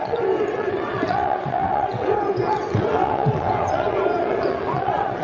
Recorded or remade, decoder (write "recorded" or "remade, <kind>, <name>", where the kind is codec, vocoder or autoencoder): remade, vocoder, WaveNeXt